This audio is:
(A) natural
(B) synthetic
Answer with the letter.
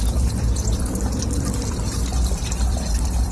B